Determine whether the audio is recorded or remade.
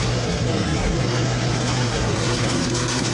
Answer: remade